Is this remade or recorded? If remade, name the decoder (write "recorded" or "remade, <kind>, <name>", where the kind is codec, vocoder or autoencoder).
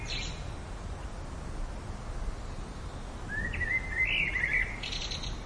recorded